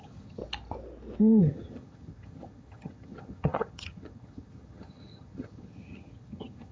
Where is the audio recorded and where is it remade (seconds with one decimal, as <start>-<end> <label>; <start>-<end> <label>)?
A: 0.0-0.4 remade; 0.4-1.4 recorded; 1.4-6.7 remade